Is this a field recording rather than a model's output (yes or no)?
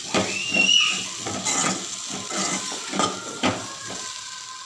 yes